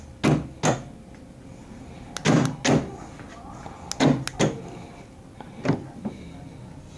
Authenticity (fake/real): real